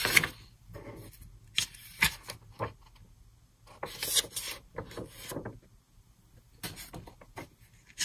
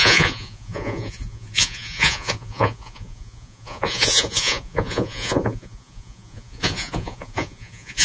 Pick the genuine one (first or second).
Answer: first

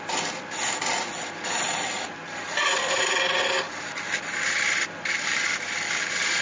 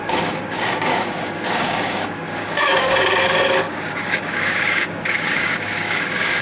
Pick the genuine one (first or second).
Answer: first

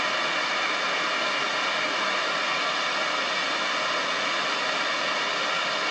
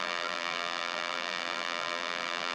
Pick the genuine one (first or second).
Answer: first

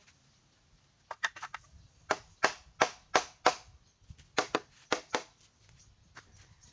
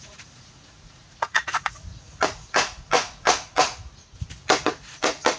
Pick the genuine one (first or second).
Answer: first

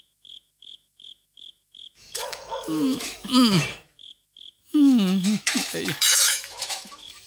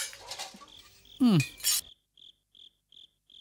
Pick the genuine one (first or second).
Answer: second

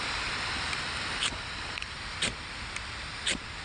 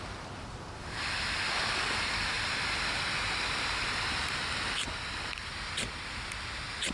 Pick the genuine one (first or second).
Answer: second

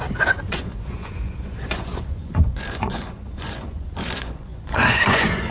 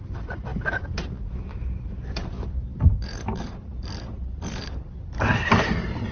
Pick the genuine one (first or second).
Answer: second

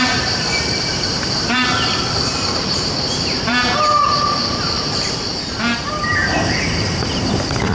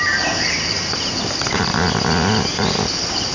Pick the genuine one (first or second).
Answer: second